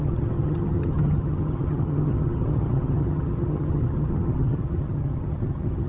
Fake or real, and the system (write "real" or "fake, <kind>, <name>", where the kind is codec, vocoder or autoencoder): fake, vocoder, HiFi-GAN